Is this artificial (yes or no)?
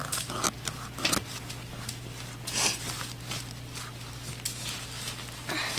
no